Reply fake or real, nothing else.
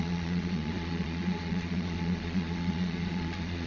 fake